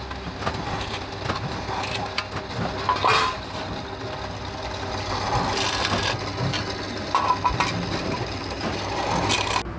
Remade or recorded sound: recorded